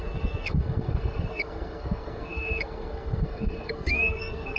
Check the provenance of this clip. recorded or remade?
remade